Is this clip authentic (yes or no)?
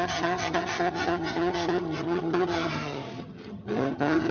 no